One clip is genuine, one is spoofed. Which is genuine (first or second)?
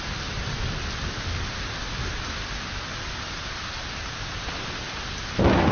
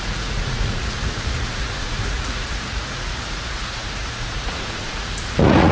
first